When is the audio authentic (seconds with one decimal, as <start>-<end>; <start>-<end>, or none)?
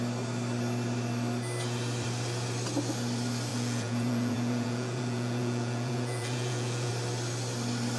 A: 0.0-3.5; 6.9-8.0